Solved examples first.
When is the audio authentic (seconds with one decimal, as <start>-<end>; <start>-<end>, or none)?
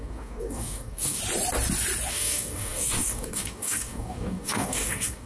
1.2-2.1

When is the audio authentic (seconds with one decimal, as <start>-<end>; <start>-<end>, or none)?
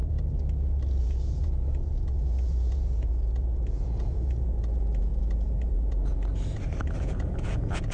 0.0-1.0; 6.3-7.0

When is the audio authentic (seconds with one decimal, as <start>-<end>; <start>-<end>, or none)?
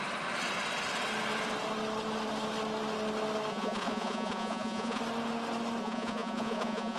0.0-3.5; 5.0-5.8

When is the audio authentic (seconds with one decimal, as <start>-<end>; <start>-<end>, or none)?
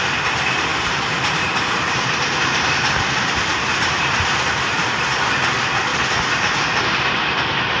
5.9-6.8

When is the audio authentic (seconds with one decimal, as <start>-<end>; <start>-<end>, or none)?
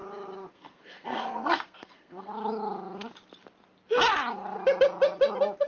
0.0-0.5; 2.3-5.7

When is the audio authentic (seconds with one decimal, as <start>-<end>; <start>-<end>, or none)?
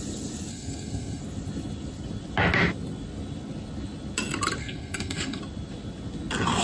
0.0-0.5; 1.2-4.6; 5.4-6.6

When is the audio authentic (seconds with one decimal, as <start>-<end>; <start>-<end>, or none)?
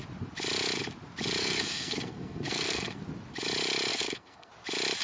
0.0-1.4; 3.0-3.9; 4.5-5.0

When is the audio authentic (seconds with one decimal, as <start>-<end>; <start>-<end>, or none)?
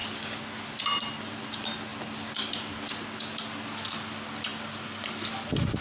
0.0-5.8